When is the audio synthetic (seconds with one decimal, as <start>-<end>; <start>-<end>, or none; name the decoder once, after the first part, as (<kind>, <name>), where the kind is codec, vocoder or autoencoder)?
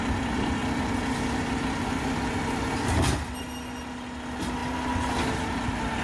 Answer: 0.6-3.4 (vocoder, BigVGAN v2)